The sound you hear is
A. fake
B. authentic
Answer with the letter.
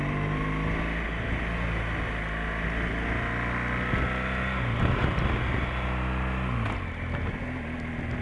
B